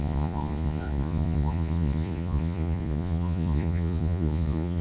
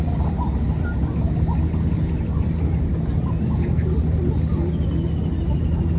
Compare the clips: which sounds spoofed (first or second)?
first